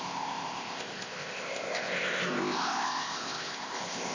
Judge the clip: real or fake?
fake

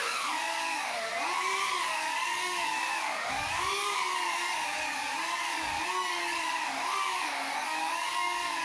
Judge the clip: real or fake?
fake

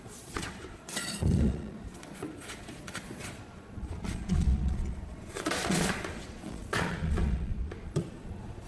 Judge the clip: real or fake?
fake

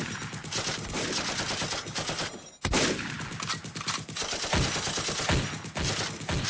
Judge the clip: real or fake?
real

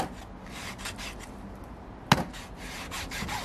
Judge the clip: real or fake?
real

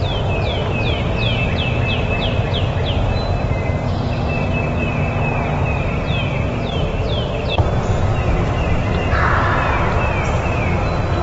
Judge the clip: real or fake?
real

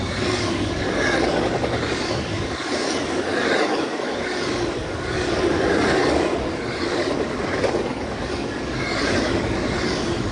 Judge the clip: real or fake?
fake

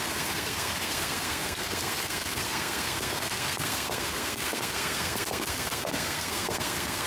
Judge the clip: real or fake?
fake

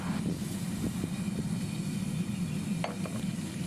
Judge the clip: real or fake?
real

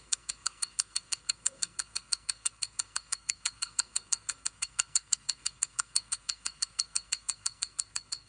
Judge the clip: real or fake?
fake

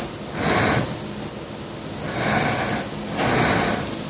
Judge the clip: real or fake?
real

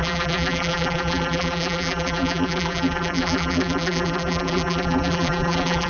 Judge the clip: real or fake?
fake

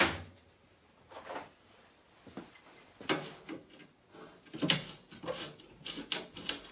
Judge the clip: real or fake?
real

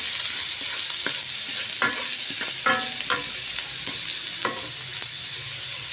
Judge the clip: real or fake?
real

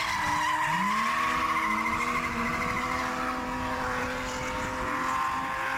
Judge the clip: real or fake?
real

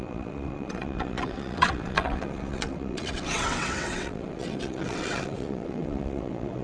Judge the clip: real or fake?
fake